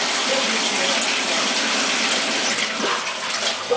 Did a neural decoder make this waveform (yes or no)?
no